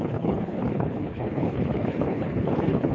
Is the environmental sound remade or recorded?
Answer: remade